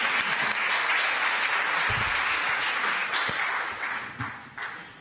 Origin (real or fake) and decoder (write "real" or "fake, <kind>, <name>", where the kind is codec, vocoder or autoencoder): real